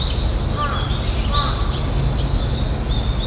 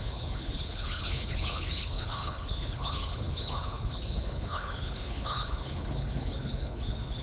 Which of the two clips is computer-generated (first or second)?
second